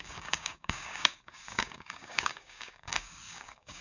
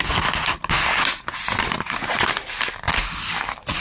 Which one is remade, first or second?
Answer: first